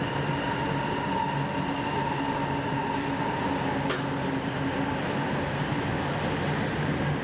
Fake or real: real